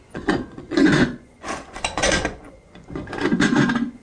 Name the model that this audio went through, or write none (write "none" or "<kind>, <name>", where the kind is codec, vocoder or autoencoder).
vocoder, Vocos